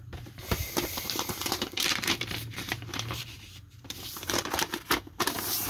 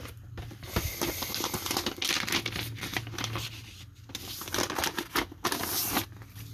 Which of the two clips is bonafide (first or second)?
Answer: second